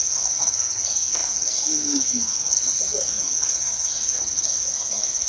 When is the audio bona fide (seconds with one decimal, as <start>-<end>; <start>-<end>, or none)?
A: none

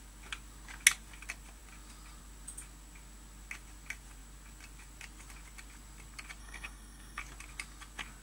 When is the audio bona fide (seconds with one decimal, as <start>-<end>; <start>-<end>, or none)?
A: 0.0-6.4; 7.2-8.2

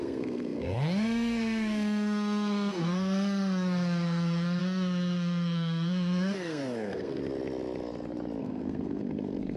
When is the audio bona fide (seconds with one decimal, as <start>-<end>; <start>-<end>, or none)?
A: 7.2-8.4

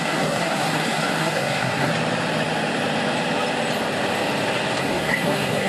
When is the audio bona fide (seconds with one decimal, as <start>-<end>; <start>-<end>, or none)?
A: 1.9-4.8

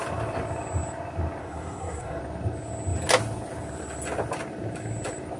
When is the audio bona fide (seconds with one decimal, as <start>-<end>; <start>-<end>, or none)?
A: 0.0-1.4; 2.2-5.4